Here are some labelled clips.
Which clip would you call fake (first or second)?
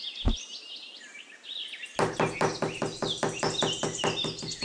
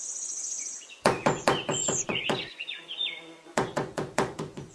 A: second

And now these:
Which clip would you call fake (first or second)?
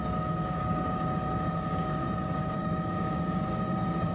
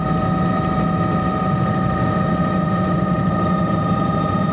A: first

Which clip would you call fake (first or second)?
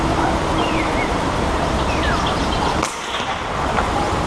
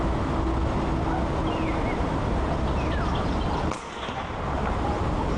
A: first